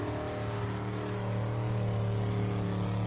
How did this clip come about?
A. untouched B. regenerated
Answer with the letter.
A